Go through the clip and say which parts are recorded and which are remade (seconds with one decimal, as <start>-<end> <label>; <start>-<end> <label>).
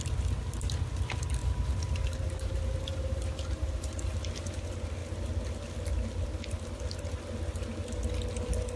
0.0-1.4 recorded; 1.4-4.0 remade; 4.0-8.8 recorded